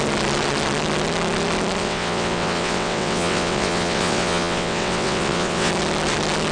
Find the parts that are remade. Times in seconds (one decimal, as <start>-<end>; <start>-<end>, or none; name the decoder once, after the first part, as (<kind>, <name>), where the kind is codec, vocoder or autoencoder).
1.8-5.7 (vocoder, WaveNeXt)